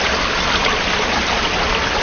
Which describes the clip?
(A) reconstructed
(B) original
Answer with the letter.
B